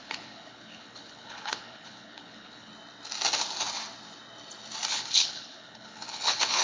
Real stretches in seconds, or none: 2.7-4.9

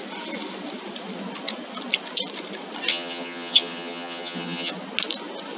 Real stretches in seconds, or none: 0.0-2.9; 4.7-5.6

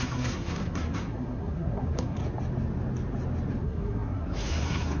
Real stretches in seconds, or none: 2.2-3.6